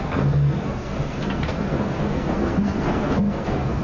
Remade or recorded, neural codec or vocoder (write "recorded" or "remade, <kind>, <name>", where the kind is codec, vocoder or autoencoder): remade, codec, SNAC